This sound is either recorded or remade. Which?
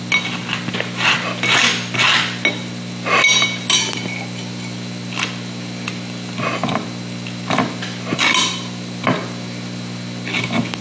recorded